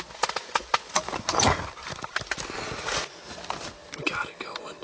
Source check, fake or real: real